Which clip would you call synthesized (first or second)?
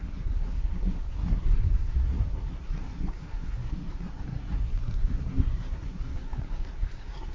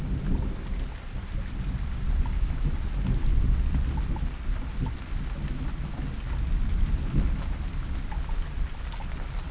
first